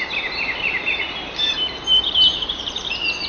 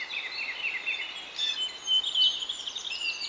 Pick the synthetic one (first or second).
first